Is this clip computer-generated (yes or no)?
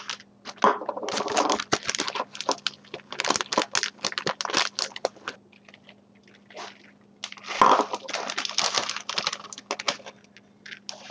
no